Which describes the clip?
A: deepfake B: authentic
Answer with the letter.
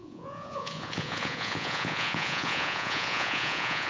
A